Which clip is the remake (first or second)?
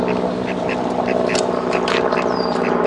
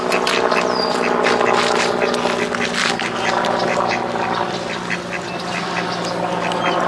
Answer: first